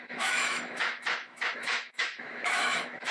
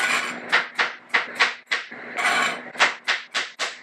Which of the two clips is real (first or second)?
second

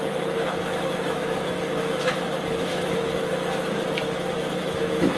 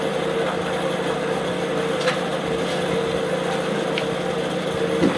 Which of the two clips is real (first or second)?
second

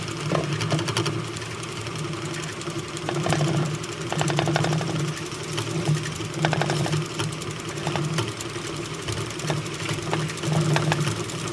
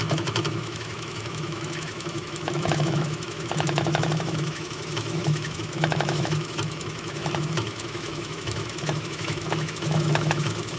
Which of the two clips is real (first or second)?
first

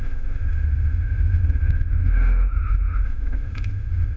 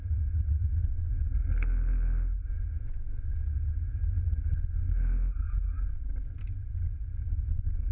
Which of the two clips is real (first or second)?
second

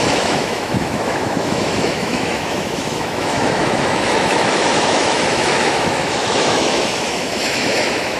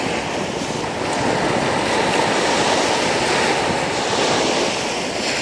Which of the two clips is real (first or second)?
second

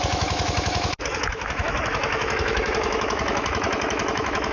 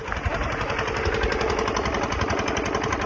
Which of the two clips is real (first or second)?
second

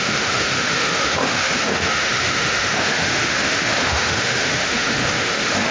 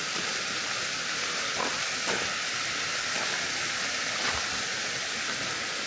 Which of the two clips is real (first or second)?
second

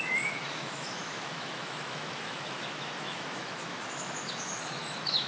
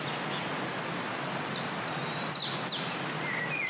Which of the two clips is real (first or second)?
second